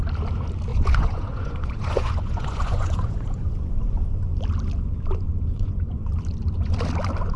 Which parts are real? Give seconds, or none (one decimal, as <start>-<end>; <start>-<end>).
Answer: 0.0-0.7; 4.3-5.5; 6.1-7.4